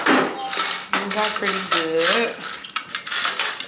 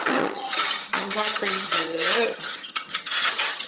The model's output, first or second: second